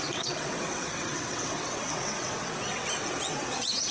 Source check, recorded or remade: remade